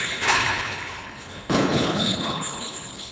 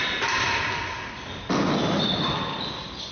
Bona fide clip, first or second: second